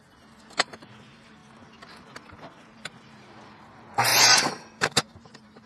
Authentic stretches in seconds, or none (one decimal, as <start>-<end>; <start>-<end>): 1.4-2.6